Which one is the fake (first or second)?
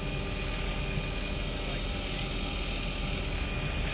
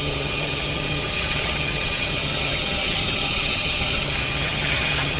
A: second